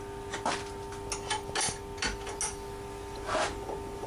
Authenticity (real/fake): real